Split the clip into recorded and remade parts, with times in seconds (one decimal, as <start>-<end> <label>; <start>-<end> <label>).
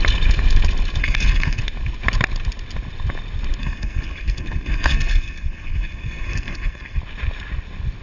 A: 0.0-1.0 recorded; 1.0-1.6 remade; 1.6-3.6 recorded; 3.6-7.0 remade; 7.0-8.0 recorded